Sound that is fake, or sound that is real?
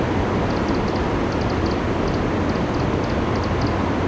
real